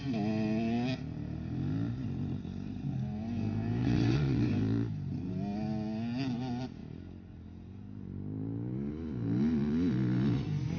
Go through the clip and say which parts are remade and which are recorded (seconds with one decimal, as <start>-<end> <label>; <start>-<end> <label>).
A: 0.0-3.8 recorded; 3.8-4.4 remade; 4.4-10.8 recorded